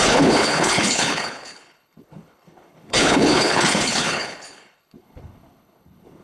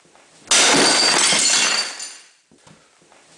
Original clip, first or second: second